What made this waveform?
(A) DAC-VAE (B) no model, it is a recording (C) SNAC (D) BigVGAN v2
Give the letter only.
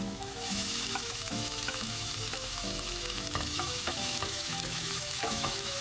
A